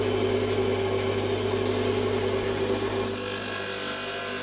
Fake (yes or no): no